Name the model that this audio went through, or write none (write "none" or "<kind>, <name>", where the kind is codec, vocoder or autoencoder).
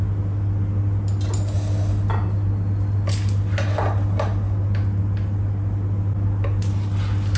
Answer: none